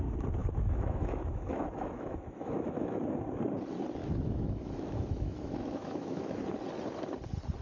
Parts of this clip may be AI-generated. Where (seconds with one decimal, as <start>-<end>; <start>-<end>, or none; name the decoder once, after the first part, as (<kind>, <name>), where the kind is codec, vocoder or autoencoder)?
0.4-3.0 (autoencoder, DAC-VAE); 4.0-6.4